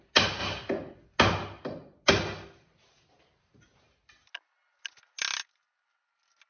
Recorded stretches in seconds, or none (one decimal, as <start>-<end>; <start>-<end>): 0.0-6.5